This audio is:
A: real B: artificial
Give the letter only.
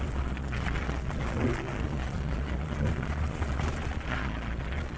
B